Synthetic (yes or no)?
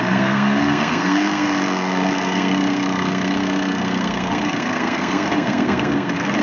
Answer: yes